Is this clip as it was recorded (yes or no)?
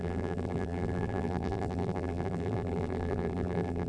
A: no